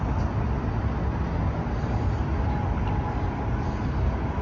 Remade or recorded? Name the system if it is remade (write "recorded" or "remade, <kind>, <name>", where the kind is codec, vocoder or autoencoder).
recorded